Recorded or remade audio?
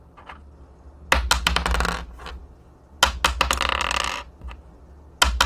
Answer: recorded